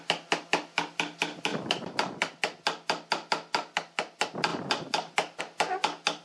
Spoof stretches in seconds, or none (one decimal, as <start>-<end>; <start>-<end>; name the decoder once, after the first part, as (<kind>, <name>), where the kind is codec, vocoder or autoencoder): none